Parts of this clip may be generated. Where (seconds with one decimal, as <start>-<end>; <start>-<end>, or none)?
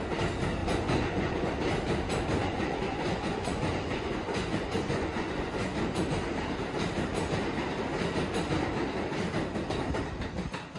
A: 0.6-1.5; 2.4-6.0